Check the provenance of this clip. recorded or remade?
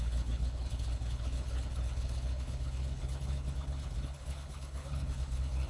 remade